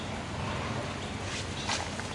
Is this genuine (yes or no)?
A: yes